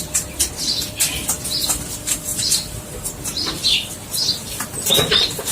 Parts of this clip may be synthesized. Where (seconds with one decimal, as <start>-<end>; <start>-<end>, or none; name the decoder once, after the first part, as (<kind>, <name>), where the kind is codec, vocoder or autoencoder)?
none